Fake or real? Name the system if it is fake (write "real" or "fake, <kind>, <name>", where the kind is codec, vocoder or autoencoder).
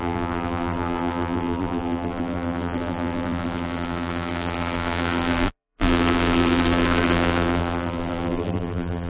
fake, vocoder, BigVGAN v2